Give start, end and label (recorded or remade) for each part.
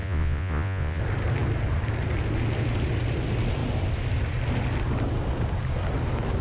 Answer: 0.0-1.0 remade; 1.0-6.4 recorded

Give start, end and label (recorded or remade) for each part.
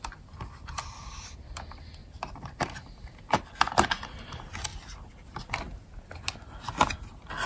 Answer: 0.0-2.0 recorded; 2.0-3.4 remade; 3.4-7.5 recorded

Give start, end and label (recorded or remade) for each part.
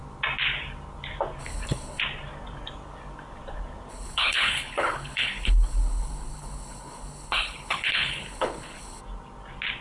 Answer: 0.0-1.4 recorded; 1.4-2.0 remade; 2.0-3.9 recorded; 3.9-9.0 remade; 9.0-9.8 recorded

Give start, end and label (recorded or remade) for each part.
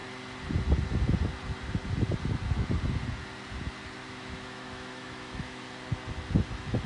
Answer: 0.0-4.0 recorded; 4.0-5.6 remade; 5.6-6.9 recorded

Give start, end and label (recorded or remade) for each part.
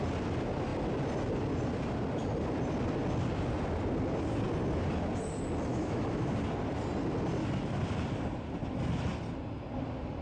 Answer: 0.0-5.7 recorded; 5.7-6.3 remade; 6.3-10.2 recorded